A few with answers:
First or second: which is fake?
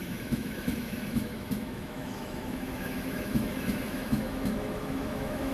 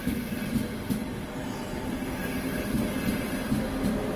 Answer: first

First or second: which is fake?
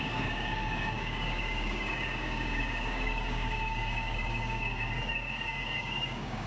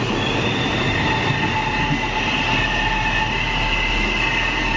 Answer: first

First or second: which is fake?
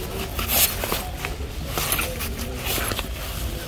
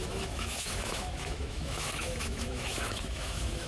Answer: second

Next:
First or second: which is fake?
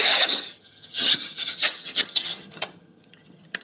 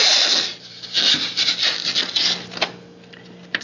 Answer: first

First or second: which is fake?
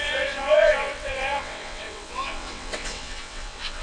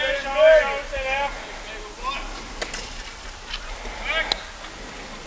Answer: first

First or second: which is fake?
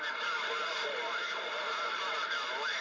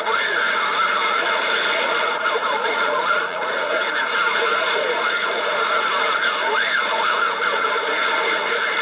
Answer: second